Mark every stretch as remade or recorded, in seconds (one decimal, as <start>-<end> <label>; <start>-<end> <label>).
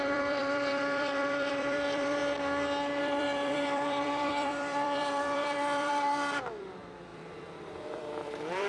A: 0.0-2.2 remade; 2.2-3.0 recorded; 3.0-8.7 remade